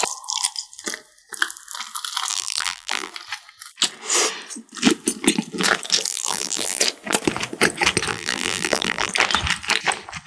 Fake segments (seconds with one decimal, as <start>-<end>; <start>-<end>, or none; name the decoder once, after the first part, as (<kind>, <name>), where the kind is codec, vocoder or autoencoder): 2.3-3.1 (vocoder, BigVGAN v2); 6.1-6.8; 8.1-9.1